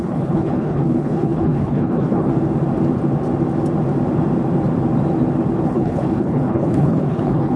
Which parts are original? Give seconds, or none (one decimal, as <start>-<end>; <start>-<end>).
2.3-5.6